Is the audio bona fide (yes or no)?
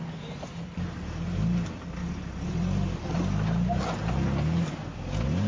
yes